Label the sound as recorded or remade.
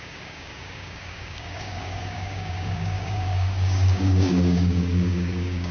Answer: remade